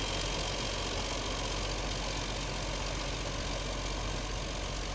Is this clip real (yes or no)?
yes